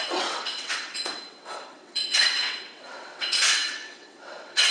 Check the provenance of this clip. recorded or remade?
remade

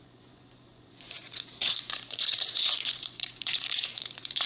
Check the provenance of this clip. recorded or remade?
remade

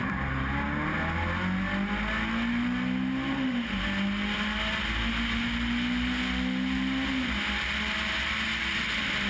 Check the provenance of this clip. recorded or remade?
recorded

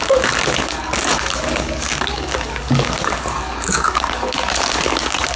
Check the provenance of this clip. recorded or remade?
remade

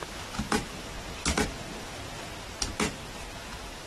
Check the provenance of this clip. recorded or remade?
recorded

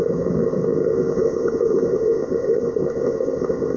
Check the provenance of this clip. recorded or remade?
remade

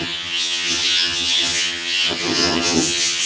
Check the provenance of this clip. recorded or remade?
remade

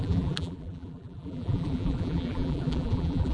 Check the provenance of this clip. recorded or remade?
remade